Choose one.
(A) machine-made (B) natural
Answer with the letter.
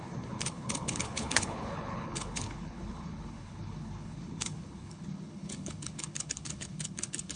A